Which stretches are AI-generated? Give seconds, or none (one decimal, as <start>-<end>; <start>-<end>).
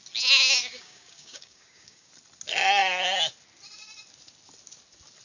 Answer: 0.6-2.1